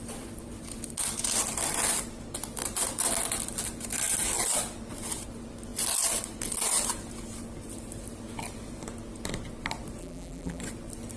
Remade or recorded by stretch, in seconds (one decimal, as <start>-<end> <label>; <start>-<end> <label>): 0.0-10.0 recorded; 10.0-10.6 remade; 10.6-11.2 recorded